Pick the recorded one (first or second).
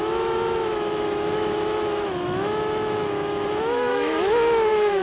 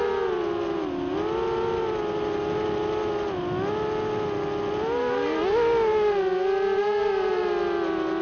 second